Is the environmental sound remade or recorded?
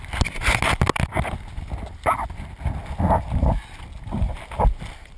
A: recorded